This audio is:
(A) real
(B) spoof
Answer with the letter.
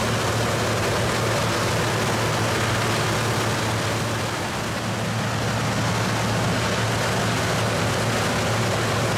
A